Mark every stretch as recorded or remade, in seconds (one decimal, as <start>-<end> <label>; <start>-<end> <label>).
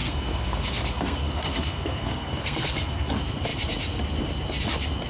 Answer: 0.0-3.1 remade; 3.1-5.1 recorded